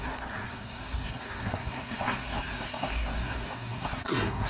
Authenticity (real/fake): fake